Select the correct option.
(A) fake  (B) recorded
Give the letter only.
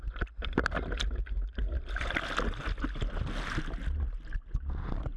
B